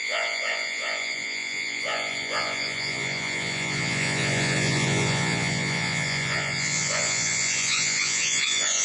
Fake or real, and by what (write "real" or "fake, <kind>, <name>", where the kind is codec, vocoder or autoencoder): fake, vocoder, Vocos